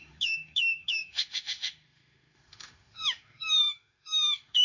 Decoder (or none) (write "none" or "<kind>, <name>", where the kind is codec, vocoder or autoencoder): autoencoder, DAC-VAE